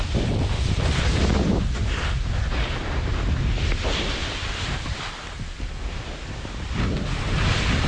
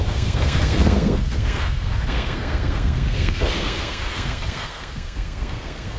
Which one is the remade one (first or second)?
second